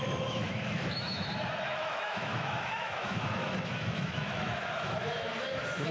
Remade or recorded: remade